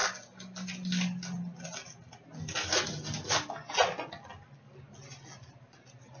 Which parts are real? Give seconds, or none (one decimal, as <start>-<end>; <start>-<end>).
0.0-6.2